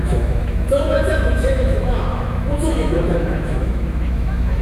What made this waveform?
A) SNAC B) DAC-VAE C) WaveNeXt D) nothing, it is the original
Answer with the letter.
B